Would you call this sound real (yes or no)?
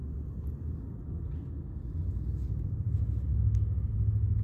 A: yes